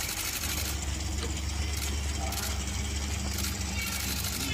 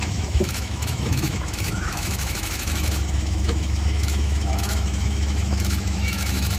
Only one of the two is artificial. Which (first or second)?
second